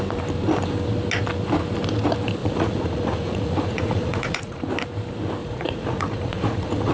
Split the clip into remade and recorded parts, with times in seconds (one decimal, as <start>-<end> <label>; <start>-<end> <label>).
0.0-2.4 recorded; 2.4-4.6 remade; 4.6-5.4 recorded; 5.4-6.9 remade